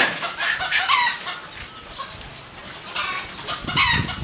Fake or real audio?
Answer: fake